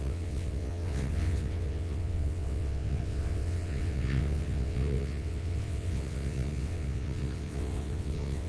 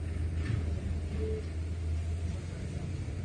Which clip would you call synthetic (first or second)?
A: first